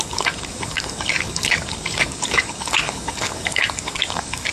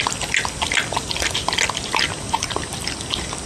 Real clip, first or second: second